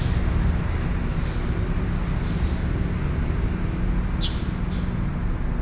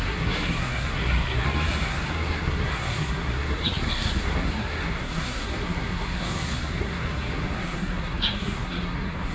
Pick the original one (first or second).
first